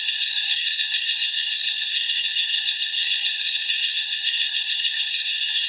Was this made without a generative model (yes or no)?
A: no